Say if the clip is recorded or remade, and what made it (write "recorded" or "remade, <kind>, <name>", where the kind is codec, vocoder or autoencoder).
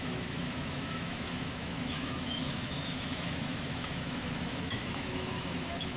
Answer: remade, autoencoder, DAC-VAE